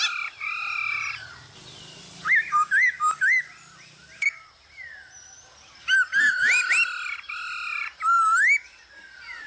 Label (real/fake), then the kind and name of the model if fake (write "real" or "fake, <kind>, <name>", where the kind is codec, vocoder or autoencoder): real